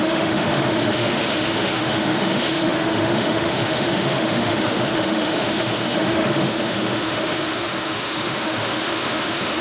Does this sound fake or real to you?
fake